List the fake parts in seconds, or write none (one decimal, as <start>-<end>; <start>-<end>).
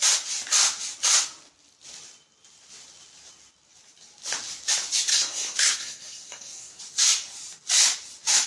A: 5.1-6.8